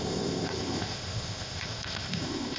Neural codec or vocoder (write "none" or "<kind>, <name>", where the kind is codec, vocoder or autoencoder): codec, ZipCodec